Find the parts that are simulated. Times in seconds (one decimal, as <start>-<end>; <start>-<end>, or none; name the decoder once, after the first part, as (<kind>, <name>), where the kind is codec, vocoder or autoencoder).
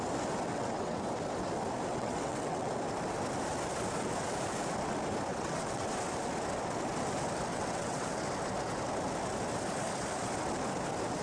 0.5-1.0 (vocoder, WaveNeXt); 1.9-2.7; 5.3-5.9; 7.5-8.2